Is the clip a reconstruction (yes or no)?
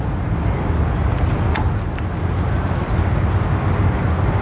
no